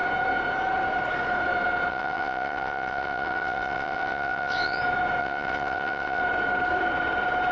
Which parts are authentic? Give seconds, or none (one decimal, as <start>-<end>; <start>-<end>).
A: 0.0-1.9; 4.8-5.2; 6.2-7.5